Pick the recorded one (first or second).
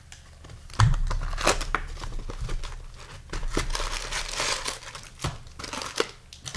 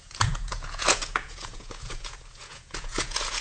first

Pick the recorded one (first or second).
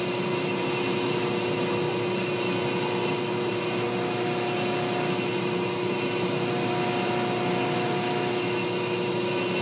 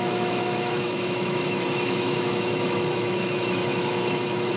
first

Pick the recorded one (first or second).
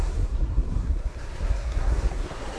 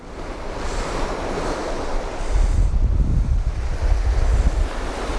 second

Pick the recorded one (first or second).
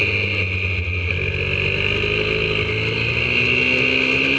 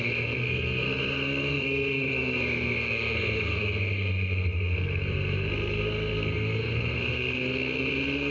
first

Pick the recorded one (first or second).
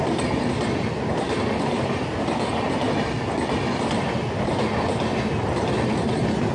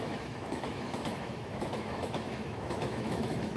first